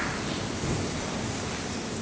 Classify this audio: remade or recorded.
recorded